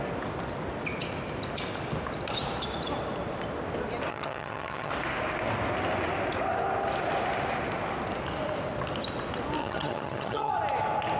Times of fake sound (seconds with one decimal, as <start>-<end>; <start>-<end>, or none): 4.1-4.9; 9.6-10.5